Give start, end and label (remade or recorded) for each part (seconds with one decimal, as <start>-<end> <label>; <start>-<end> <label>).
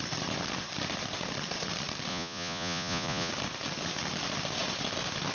0.0-2.1 recorded; 2.1-3.3 remade; 3.3-5.3 recorded